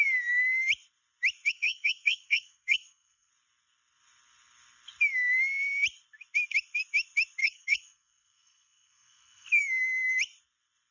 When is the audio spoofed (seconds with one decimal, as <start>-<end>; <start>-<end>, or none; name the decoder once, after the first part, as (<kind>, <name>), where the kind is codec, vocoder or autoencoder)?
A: 1.5-3.3 (codec, SNAC); 7.4-9.6